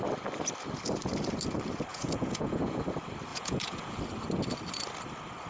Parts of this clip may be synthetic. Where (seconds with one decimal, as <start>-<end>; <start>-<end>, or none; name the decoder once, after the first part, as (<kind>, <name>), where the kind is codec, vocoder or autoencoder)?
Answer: 1.9-2.8 (vocoder, Vocos); 3.3-4.0